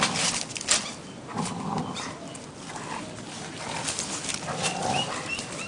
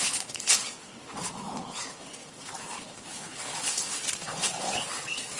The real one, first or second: first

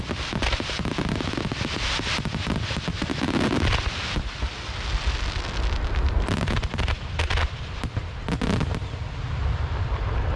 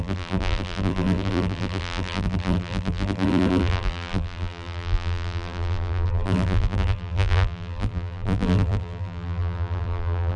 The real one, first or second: first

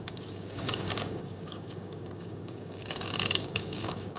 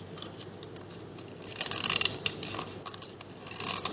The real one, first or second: second